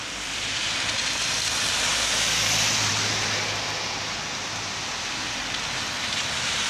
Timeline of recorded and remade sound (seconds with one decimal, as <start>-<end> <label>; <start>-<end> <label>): 0.0-5.4 remade; 5.4-6.2 recorded; 6.2-6.7 remade

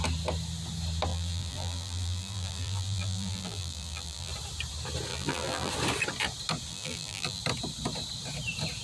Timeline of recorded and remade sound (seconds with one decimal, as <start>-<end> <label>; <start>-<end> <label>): 0.0-1.1 recorded; 1.1-4.3 remade; 4.3-5.1 recorded; 5.1-5.7 remade; 5.7-6.7 recorded; 6.7-7.4 remade; 7.4-8.8 recorded

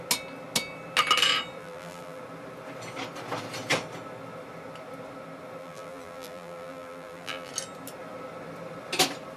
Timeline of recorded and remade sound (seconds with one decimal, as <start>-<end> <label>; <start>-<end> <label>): 0.0-1.6 recorded; 1.6-2.2 remade; 2.2-5.6 recorded; 5.6-7.5 remade; 7.5-9.4 recorded

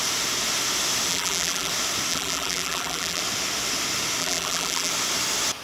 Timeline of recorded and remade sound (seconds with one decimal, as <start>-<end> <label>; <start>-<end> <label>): 0.0-1.1 recorded; 1.1-1.7 remade; 1.7-2.1 recorded; 2.1-3.2 remade; 3.2-4.2 recorded; 4.2-4.9 remade; 4.9-5.6 recorded

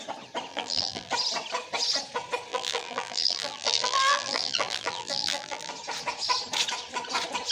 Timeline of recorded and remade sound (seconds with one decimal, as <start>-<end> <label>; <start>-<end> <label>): 0.0-0.5 recorded; 0.5-1.1 remade; 1.1-2.5 recorded; 2.5-5.7 remade; 5.7-7.5 recorded

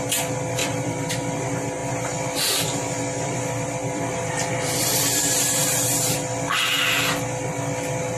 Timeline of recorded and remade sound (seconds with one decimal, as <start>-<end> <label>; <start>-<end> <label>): 0.0-0.6 recorded; 0.6-1.1 remade; 1.1-1.8 recorded; 1.8-5.2 remade; 5.2-8.2 recorded

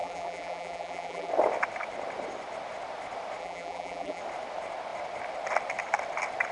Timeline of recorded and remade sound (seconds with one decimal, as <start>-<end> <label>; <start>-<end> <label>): 0.0-1.3 remade; 1.3-3.4 recorded; 3.4-4.2 remade; 4.2-6.5 recorded

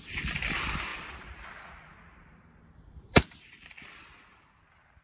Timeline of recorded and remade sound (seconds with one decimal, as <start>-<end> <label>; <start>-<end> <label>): 0.0-0.9 recorded; 0.9-3.9 remade; 3.9-5.0 recorded